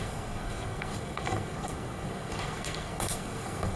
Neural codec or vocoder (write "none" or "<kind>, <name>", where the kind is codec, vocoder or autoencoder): codec, SNAC